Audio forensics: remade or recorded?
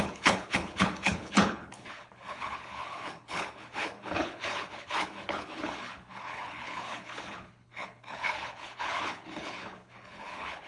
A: remade